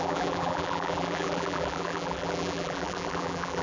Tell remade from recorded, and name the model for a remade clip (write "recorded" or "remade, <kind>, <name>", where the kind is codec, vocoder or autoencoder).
remade, vocoder, BigVGAN v2